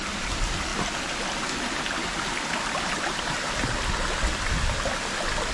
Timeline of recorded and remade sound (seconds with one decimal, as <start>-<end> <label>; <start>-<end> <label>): 0.0-5.5 recorded